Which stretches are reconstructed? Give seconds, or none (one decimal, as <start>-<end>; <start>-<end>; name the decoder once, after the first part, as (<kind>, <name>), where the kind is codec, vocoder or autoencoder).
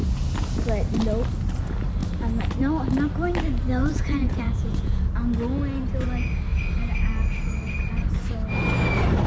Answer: 3.8-5.0 (vocoder, Vocos)